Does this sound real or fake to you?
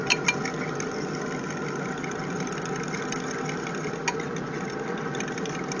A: real